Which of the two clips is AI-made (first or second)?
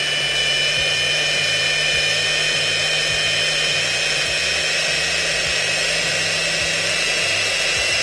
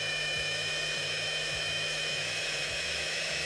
second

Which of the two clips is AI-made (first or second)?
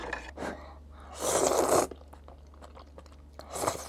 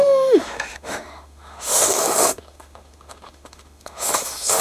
second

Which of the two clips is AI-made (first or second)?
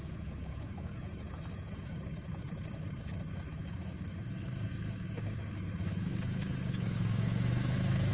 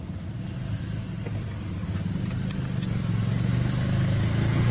first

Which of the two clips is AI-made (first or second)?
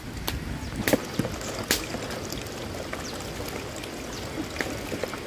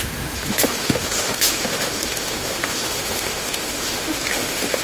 second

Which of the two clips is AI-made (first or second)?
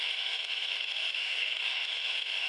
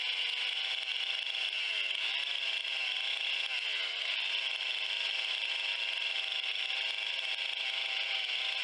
first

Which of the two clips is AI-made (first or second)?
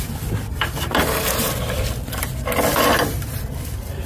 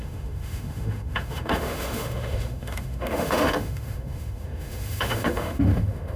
second